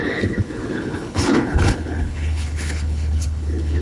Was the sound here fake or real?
fake